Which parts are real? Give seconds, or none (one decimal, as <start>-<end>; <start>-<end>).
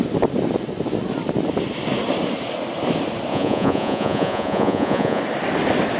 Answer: 0.0-3.3; 5.2-6.0